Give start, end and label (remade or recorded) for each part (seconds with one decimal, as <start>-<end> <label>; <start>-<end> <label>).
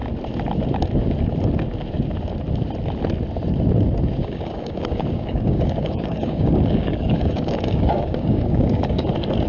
0.0-4.2 recorded; 4.2-9.1 remade; 9.1-9.5 recorded